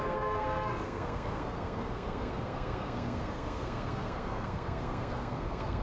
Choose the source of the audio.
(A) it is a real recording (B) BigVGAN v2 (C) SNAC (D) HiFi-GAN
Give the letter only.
C